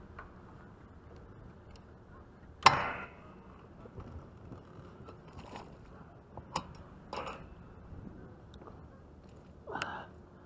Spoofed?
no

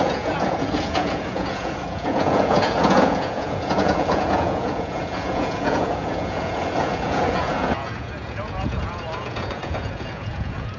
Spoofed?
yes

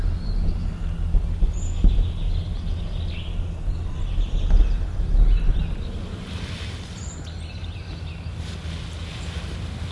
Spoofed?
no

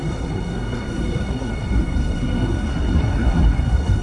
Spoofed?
yes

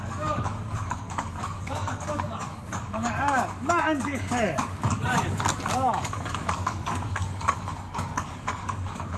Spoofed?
yes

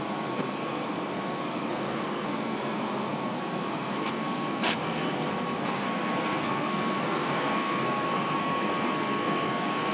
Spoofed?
yes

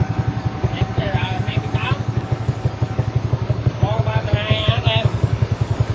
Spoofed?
yes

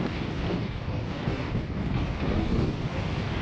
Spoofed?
yes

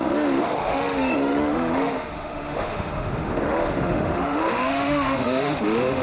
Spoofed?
yes